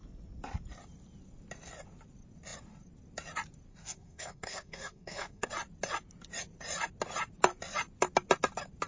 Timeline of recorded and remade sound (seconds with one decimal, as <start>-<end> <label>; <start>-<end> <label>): 0.0-3.7 recorded; 3.7-5.5 remade; 5.5-8.9 recorded